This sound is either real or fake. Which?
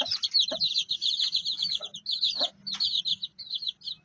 real